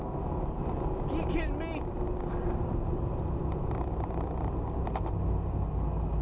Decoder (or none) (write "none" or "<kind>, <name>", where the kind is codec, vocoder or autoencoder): none